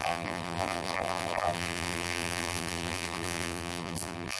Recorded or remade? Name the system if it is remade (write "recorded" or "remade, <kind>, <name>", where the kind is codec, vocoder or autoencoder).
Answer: remade, vocoder, BigVGAN v2